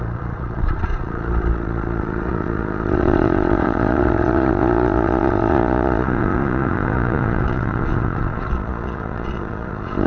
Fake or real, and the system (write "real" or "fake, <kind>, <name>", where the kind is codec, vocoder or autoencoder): fake, vocoder, Vocos